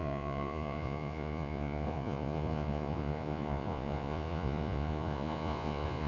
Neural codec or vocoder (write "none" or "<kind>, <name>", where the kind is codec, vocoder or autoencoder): vocoder, Vocos